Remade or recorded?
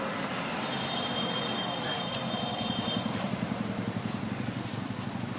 recorded